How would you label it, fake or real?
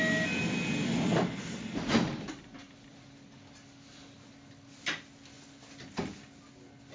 real